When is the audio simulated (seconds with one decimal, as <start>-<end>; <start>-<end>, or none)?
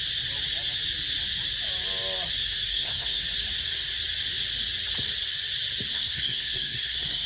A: 2.7-3.2; 5.9-7.3